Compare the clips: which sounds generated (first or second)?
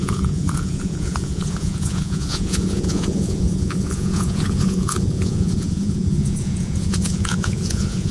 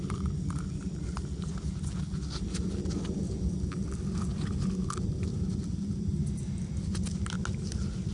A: first